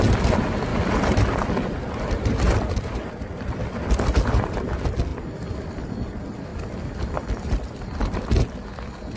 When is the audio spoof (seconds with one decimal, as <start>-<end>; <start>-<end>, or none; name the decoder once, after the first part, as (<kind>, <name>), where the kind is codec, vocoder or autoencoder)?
0.7-3.9 (vocoder, BigVGAN v2); 5.1-5.8; 6.5-7.6